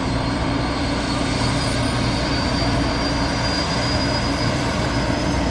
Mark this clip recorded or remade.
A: remade